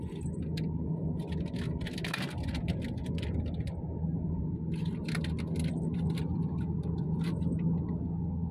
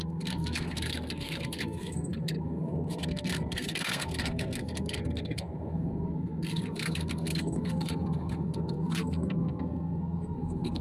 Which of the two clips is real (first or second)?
first